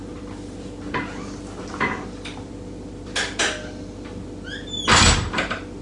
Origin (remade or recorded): recorded